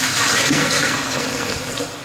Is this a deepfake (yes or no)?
yes